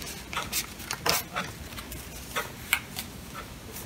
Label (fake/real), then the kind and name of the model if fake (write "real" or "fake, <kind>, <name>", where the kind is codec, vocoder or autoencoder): real